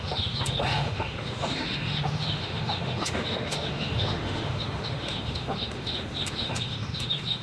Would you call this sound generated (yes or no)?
yes